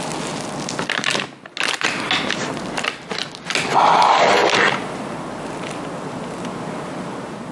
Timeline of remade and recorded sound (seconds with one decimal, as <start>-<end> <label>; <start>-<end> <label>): 0.0-7.5 recorded